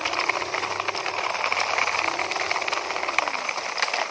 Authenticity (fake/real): real